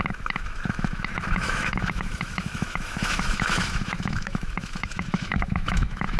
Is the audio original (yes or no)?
no